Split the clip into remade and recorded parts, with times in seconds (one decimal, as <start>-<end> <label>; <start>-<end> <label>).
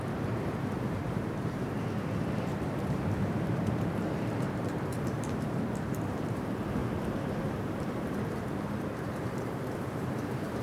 0.0-6.8 remade; 6.8-7.6 recorded; 7.6-10.6 remade